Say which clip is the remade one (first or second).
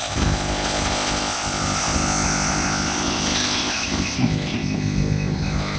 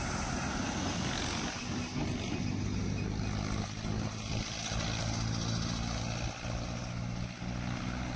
first